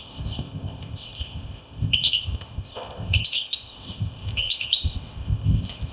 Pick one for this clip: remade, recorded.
remade